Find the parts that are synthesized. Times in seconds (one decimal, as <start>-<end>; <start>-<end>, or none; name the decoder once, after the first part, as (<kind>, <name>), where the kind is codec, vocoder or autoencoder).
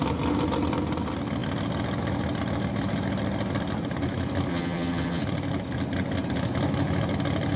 4.5-5.2 (vocoder, HiFi-GAN)